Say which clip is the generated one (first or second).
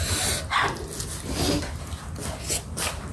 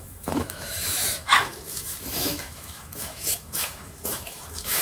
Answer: second